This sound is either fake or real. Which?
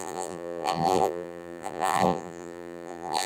fake